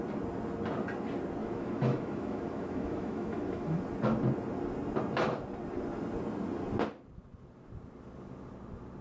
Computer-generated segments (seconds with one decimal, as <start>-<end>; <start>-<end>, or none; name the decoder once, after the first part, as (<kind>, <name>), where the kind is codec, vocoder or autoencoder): 1.4-3.8 (autoencoder, DAC-VAE)